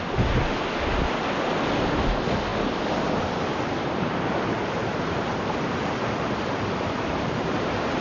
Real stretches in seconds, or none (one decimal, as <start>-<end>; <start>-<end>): 0.0-4.8